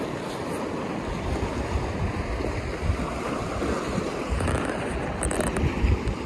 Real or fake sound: real